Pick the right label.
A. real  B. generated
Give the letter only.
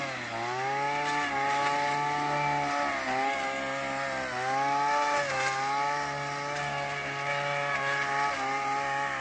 A